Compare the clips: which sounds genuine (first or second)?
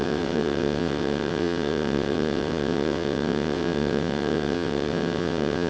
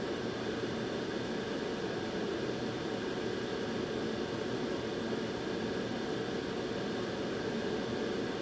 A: second